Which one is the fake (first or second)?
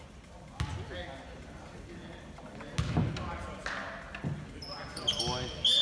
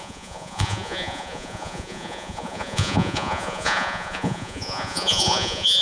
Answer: second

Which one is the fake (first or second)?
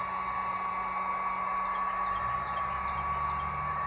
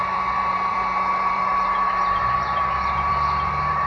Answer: second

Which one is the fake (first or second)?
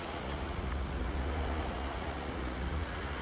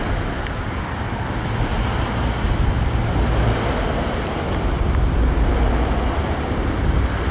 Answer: first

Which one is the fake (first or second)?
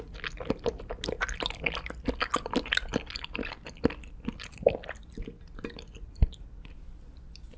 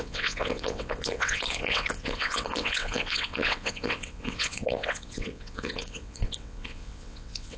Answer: second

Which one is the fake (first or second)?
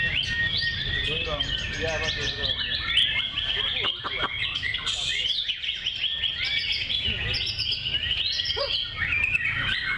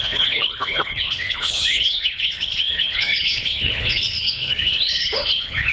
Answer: second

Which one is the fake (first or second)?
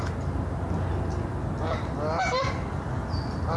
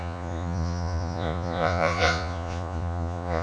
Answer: second